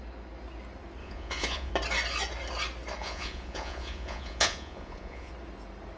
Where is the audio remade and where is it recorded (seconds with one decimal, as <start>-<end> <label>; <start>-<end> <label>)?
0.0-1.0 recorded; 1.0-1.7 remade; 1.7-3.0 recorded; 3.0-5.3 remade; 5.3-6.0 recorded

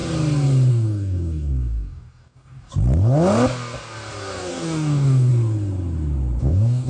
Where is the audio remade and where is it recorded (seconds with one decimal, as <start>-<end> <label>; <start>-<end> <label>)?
0.0-0.7 recorded; 0.7-2.7 remade; 2.7-4.2 recorded; 4.2-5.3 remade; 5.3-6.4 recorded; 6.4-6.9 remade

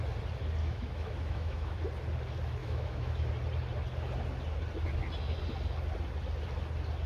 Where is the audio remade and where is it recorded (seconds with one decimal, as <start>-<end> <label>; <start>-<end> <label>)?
0.0-0.6 recorded; 0.6-1.8 remade; 1.8-2.6 recorded; 2.6-3.3 remade; 3.3-7.1 recorded